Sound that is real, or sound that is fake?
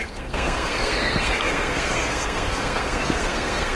fake